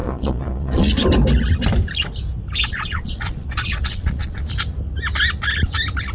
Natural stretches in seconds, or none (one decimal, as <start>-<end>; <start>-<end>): 1.0-2.6; 4.5-6.1